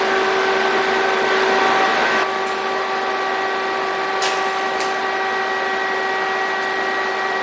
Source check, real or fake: real